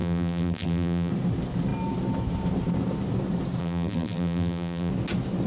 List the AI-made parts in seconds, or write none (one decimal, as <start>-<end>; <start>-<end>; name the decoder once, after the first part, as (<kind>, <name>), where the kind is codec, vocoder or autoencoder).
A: 0.0-1.1 (vocoder, BigVGAN v2); 3.6-4.9